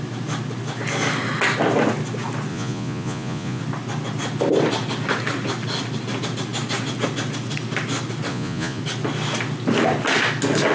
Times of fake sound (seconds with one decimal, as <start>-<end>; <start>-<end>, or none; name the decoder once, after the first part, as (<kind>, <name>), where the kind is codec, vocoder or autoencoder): 2.5-3.6 (vocoder, Vocos); 8.3-8.8